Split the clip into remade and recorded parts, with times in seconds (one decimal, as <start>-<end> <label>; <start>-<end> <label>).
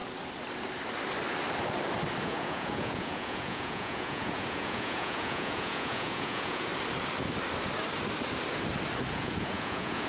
0.0-2.2 recorded; 2.2-6.7 remade; 6.7-9.1 recorded; 9.1-10.1 remade